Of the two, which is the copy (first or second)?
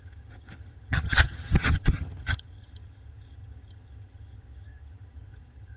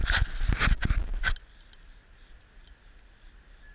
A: first